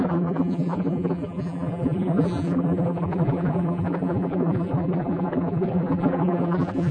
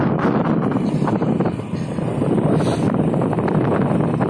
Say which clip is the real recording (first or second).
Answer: second